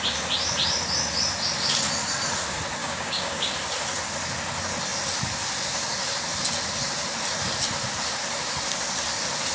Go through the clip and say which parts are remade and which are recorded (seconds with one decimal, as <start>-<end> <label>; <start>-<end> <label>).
0.0-2.8 recorded; 2.8-3.5 remade; 3.5-9.5 recorded